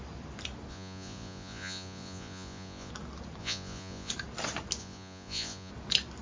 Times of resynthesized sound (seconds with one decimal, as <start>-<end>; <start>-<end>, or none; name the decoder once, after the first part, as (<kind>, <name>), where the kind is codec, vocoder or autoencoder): 0.7-2.9 (vocoder, Vocos); 3.4-4.1; 4.8-5.7